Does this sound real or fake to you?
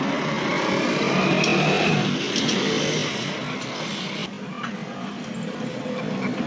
real